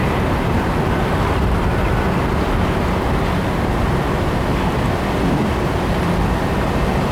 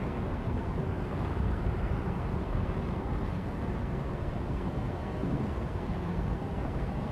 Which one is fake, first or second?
second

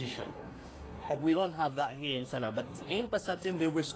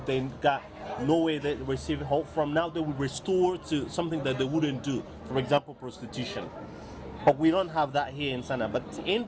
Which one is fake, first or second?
first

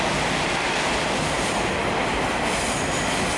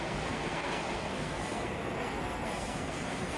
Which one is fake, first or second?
second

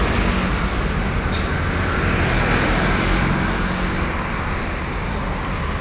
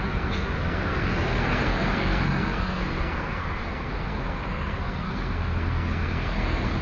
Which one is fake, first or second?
second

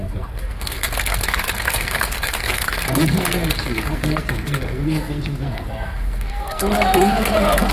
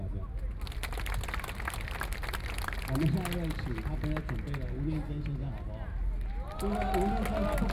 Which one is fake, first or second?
first